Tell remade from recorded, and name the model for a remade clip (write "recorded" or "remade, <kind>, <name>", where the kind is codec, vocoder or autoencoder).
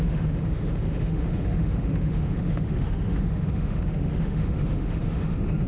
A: remade, autoencoder, DAC-VAE